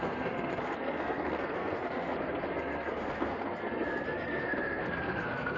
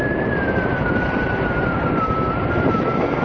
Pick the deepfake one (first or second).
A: first